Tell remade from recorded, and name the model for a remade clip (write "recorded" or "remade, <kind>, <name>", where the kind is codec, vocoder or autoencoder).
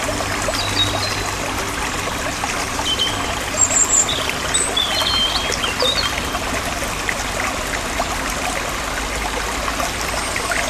recorded